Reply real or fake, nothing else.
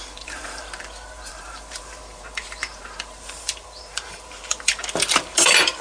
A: fake